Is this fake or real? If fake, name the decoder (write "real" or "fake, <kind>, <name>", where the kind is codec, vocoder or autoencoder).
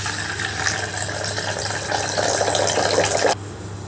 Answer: real